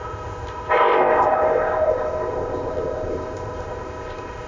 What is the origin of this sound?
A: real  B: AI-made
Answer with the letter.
B